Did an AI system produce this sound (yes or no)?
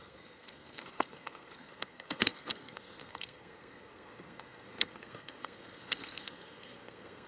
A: yes